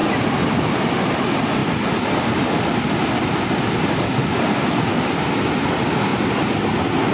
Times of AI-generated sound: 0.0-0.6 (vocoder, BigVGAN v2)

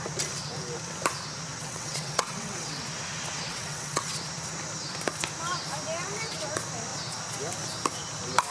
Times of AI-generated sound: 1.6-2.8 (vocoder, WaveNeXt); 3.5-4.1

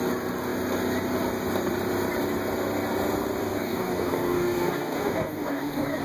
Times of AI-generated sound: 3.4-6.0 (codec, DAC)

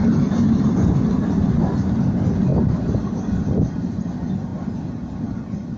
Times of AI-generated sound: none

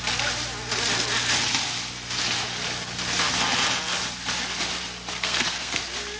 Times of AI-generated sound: 5.2-5.8 (codec, SNAC)

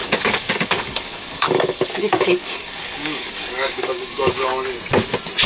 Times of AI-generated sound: 0.0-4.5 (codec, DAC)